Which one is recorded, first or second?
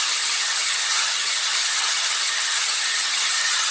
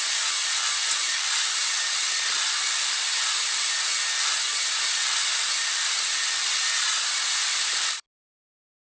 second